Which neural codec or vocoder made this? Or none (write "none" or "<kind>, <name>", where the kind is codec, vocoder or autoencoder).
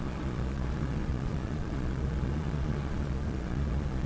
vocoder, Vocos